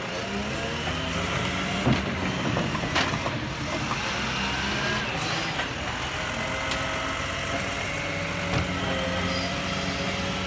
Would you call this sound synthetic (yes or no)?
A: no